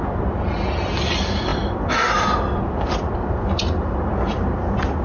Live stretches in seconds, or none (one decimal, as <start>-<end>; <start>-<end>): 0.0-5.0